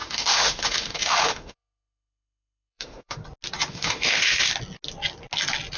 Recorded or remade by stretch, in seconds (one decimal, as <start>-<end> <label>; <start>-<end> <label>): 0.0-3.2 remade; 3.2-3.7 recorded; 3.7-4.5 remade; 4.5-5.8 recorded